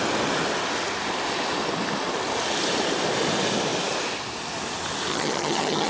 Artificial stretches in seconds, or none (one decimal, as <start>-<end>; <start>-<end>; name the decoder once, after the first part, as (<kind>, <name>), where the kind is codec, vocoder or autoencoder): 5.1-5.9 (vocoder, HiFi-GAN)